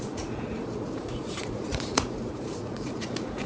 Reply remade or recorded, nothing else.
remade